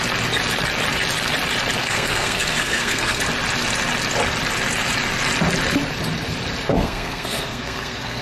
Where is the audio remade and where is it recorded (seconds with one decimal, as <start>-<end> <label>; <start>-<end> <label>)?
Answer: 0.0-1.8 recorded; 1.8-3.2 remade; 3.2-6.7 recorded; 6.7-8.2 remade